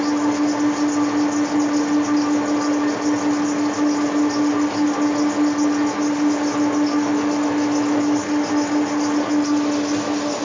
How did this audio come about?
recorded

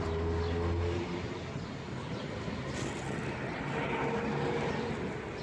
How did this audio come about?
recorded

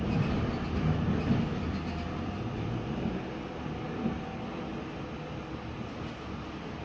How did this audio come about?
recorded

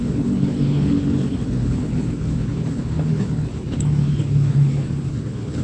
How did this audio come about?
remade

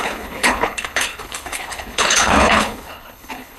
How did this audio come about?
remade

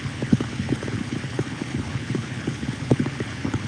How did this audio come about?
remade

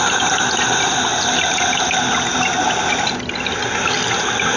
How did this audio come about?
recorded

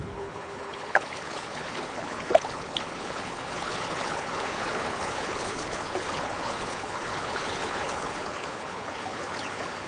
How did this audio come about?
remade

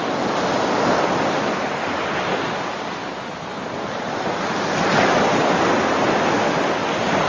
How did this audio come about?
recorded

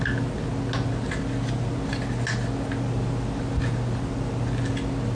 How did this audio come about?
recorded